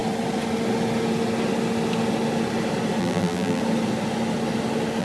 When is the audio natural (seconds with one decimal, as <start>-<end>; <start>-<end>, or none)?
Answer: 0.0-3.0; 3.6-5.0